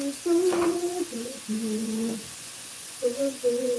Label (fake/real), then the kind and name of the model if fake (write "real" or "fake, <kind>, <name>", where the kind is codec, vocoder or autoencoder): fake, vocoder, Vocos